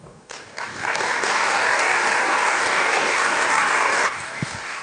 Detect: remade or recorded remade